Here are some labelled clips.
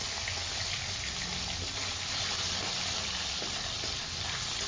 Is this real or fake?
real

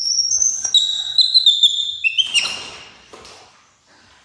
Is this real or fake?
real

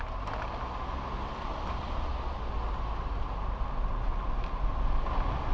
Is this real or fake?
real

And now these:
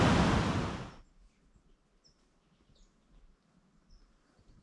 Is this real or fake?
real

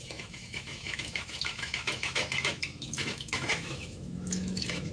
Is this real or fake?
fake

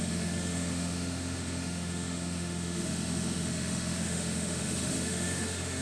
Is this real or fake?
fake